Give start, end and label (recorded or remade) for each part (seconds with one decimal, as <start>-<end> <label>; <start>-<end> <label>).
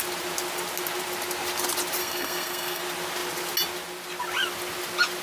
0.0-2.0 recorded; 2.0-2.8 remade; 2.8-5.2 recorded